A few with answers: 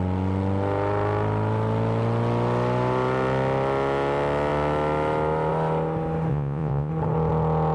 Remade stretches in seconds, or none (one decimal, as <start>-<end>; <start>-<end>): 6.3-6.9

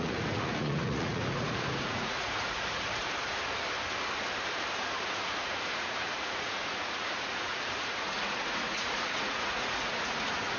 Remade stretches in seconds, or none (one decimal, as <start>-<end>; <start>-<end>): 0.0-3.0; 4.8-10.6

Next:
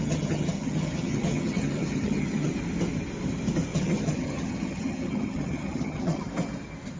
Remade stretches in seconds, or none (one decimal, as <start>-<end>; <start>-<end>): 0.0-2.5; 3.7-6.3

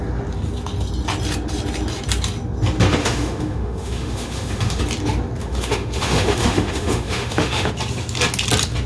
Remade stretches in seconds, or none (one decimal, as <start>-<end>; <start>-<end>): 3.0-4.8; 5.4-7.7

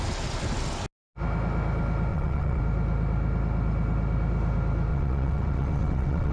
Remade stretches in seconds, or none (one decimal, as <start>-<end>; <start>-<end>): 2.1-2.6; 4.9-6.3

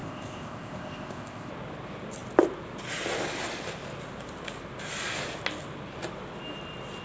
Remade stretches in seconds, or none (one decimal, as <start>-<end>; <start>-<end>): 0.0-1.5

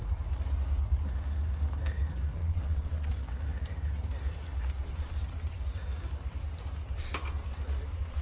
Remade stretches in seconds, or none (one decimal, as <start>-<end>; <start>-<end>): 2.4-3.1

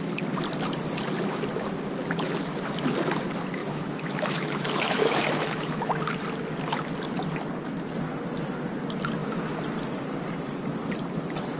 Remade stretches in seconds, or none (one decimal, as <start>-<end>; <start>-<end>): 3.6-5.9